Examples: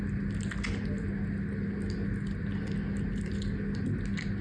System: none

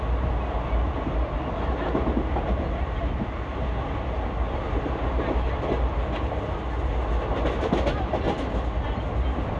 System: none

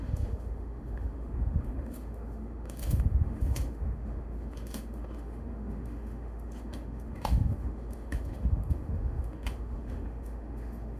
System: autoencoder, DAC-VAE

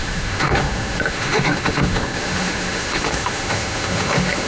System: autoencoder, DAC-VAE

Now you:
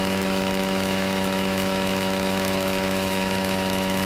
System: autoencoder, DAC-VAE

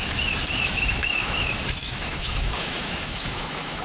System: autoencoder, DAC-VAE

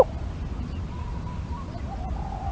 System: none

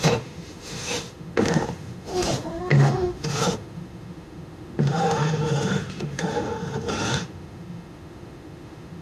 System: autoencoder, DAC-VAE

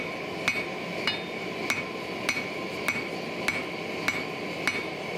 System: none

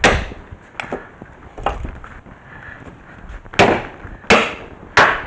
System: none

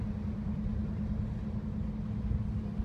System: none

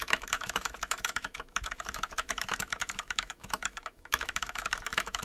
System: autoencoder, DAC-VAE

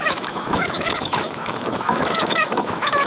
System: autoencoder, DAC-VAE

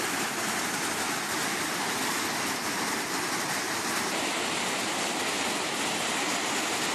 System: none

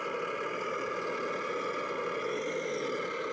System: none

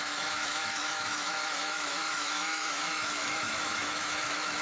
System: autoencoder, DAC-VAE